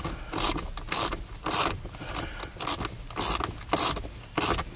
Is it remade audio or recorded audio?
recorded